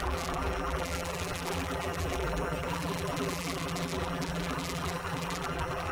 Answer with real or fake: fake